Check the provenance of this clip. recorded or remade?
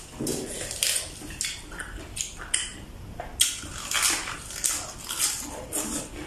recorded